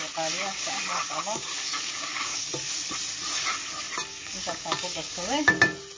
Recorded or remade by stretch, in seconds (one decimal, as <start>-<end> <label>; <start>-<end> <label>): 0.0-0.4 recorded; 0.4-2.5 remade; 2.5-4.1 recorded; 4.1-5.5 remade; 5.5-6.0 recorded